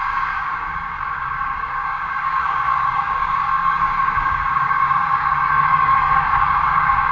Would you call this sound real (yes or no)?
no